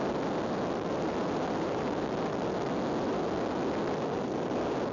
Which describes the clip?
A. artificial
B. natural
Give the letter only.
B